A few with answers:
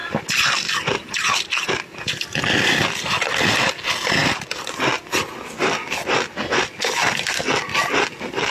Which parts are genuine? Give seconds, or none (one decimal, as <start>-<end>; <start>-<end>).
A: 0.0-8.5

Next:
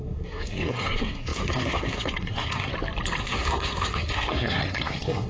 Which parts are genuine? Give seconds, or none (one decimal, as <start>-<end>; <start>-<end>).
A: 2.7-3.2

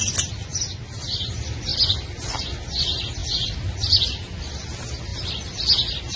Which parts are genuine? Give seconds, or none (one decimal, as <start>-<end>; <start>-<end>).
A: 0.0-1.7; 2.3-3.2; 4.5-5.1

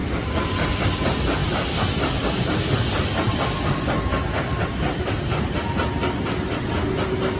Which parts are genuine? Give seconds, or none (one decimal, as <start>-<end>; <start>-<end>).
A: 0.0-7.4